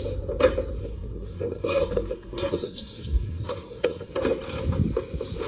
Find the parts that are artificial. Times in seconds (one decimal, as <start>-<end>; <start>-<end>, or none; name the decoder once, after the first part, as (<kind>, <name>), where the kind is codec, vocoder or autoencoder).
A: 0.8-4.1 (codec, SNAC)